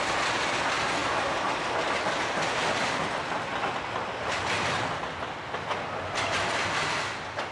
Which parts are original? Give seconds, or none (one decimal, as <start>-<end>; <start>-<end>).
0.0-7.5